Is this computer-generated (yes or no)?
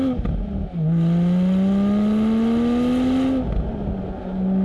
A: no